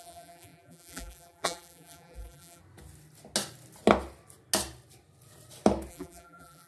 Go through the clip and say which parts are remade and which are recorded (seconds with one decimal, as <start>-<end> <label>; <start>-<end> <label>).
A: 0.0-2.6 remade; 2.6-5.9 recorded; 5.9-6.7 remade

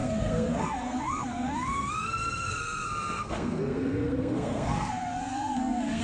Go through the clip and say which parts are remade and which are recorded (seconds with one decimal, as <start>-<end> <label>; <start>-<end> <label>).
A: 0.0-6.0 remade

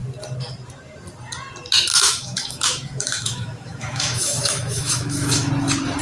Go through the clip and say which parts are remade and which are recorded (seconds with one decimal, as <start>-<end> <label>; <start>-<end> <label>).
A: 0.0-1.9 recorded; 1.9-5.5 remade; 5.5-6.0 recorded

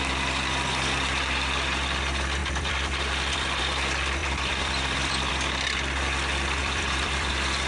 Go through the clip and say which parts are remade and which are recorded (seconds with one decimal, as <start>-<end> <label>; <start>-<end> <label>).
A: 0.0-2.4 recorded; 2.4-3.6 remade; 3.6-4.2 recorded; 4.2-5.3 remade; 5.3-6.6 recorded; 6.6-7.3 remade; 7.3-7.7 recorded

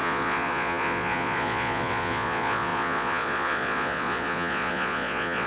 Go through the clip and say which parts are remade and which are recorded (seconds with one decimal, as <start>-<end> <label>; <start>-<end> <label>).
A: 0.0-5.5 remade

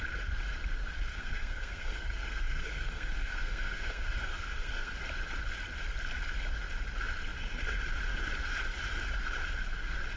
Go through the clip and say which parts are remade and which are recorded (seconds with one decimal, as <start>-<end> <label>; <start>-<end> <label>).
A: 0.0-1.1 recorded; 1.1-4.9 remade; 4.9-10.2 recorded

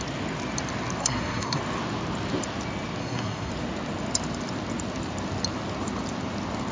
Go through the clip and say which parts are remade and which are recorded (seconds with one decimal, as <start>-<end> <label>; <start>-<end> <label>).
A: 0.0-1.0 recorded; 1.0-1.6 remade; 1.6-3.0 recorded; 3.0-3.5 remade; 3.5-6.7 recorded

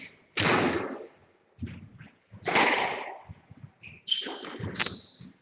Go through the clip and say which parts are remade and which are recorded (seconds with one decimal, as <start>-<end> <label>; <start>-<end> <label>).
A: 0.0-5.4 recorded